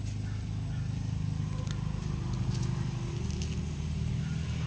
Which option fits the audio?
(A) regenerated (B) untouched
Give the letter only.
B